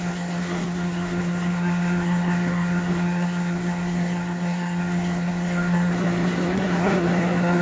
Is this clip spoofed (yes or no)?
yes